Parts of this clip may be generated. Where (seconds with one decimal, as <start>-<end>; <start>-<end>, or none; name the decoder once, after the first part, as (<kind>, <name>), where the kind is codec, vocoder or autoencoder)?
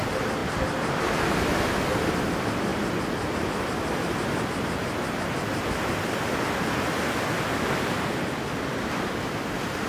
0.4-1.0 (vocoder, BigVGAN v2)